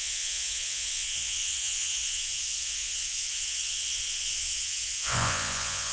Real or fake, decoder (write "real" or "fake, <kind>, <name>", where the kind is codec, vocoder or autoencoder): fake, vocoder, Vocos